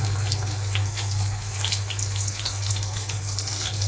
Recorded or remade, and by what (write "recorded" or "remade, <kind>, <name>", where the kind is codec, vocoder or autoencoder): remade, codec, SNAC